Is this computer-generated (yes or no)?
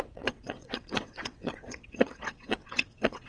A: yes